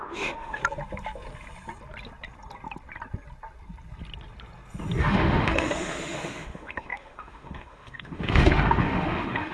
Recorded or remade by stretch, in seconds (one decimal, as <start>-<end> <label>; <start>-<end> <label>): 0.0-0.6 remade; 0.6-5.0 recorded; 5.0-9.5 remade